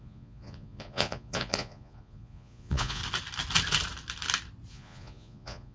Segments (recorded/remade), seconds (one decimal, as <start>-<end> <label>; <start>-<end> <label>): 0.0-3.0 remade; 3.0-4.7 recorded; 4.7-5.7 remade